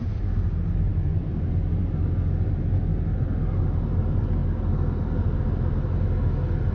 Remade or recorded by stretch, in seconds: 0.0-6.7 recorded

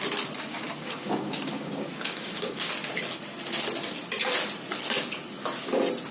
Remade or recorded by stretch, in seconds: 0.0-0.5 recorded; 0.5-2.7 remade; 2.7-6.1 recorded